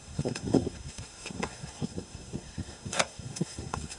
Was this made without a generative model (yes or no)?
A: no